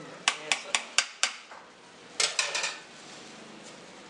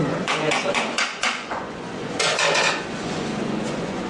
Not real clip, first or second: second